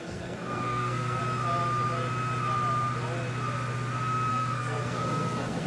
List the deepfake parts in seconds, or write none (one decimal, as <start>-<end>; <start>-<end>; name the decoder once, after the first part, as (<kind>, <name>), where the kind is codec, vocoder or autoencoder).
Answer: 0.0-1.2 (codec, SNAC); 4.3-5.7